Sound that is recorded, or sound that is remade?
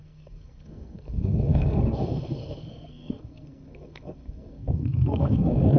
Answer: remade